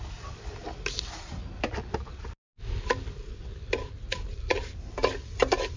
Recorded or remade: recorded